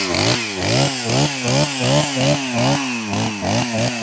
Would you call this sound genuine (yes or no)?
yes